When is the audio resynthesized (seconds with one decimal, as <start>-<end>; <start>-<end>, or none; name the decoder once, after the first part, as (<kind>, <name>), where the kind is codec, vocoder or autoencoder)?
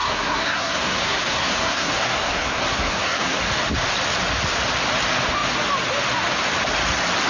0.0-3.5 (codec, SNAC)